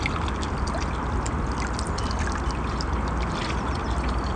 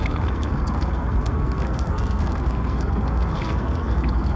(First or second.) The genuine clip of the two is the first